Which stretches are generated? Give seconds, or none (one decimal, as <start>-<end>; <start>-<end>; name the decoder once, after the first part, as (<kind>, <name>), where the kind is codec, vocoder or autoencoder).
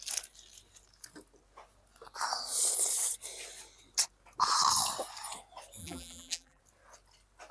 5.8-6.6 (vocoder, BigVGAN v2)